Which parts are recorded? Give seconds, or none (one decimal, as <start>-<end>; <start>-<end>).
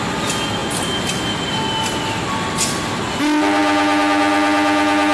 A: 0.0-5.1